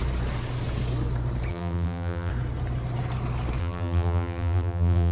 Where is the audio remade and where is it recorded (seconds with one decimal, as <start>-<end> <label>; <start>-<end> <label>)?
0.0-1.5 recorded; 1.5-2.3 remade; 2.3-3.6 recorded; 3.6-5.1 remade